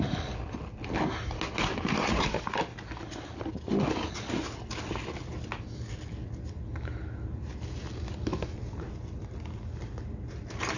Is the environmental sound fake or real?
real